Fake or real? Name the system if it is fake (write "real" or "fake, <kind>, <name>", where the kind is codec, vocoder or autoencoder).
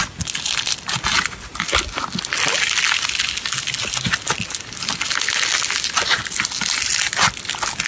real